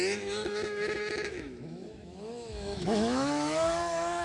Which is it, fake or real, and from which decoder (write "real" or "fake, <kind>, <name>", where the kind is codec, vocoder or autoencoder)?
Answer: fake, autoencoder, DAC-VAE